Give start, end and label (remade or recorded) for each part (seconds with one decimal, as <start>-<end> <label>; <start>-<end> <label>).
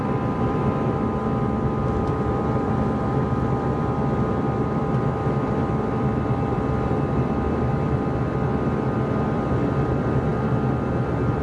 0.0-10.3 remade; 10.3-11.0 recorded; 11.0-11.4 remade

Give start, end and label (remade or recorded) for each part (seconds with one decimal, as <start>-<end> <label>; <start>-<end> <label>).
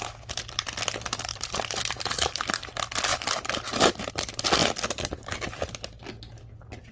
0.0-1.3 recorded; 1.3-2.4 remade; 2.4-3.1 recorded; 3.1-4.1 remade; 4.1-4.6 recorded; 4.6-5.1 remade; 5.1-6.9 recorded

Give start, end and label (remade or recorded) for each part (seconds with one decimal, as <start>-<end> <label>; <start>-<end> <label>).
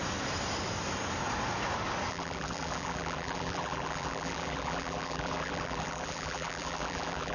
0.0-2.1 recorded; 2.1-7.3 remade